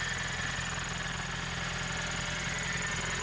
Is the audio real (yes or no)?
yes